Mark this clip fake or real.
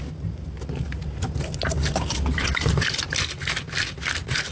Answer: real